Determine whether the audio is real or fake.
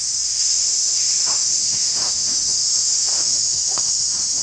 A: fake